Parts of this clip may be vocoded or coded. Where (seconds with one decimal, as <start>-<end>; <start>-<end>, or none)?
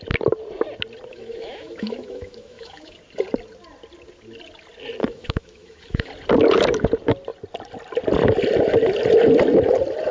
1.1-3.0; 5.0-6.1